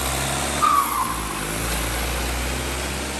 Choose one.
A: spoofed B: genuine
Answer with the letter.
B